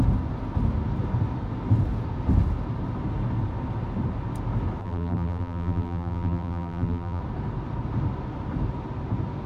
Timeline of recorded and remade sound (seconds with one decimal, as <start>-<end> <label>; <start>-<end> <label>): 0.0-4.8 recorded; 4.8-7.2 remade; 7.2-9.5 recorded